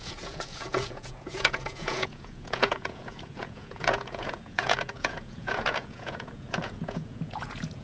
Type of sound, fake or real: fake